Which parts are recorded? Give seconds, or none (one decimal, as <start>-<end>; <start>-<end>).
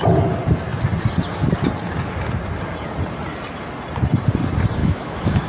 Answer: 0.0-4.8